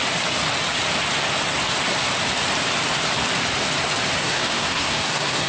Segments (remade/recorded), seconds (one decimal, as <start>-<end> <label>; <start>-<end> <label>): 0.0-4.2 recorded; 4.2-5.5 remade